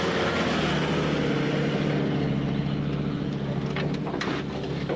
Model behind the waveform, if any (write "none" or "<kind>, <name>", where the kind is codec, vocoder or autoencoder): none